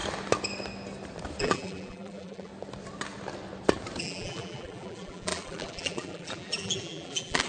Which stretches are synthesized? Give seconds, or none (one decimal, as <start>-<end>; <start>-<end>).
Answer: 1.4-2.5; 4.0-7.5